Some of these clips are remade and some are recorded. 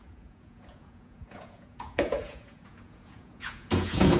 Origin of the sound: remade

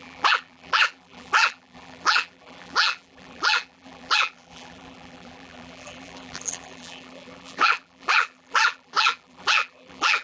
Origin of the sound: remade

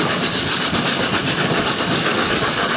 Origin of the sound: remade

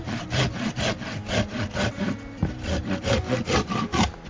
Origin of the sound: recorded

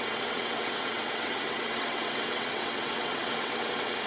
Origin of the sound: remade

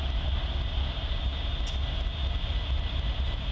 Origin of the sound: recorded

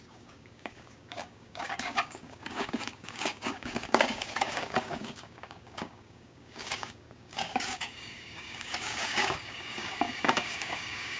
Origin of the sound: remade